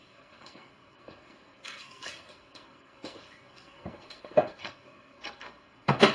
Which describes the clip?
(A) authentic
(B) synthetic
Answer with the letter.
B